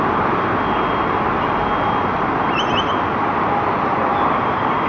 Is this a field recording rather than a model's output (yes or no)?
yes